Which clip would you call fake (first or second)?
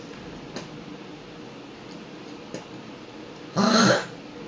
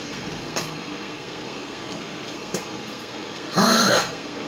second